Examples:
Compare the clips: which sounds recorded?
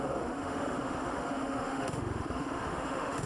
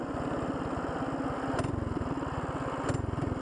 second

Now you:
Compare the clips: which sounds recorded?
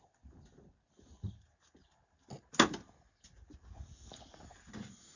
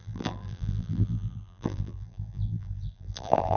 first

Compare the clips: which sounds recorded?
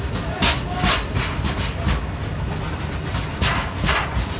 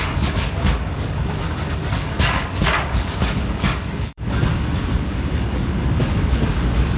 first